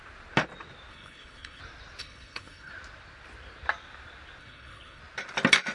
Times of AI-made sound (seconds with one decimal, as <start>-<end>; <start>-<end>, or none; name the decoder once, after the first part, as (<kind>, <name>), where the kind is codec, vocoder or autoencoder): 0.9-1.6 (codec, HILCodec); 2.0-2.7; 4.4-5.0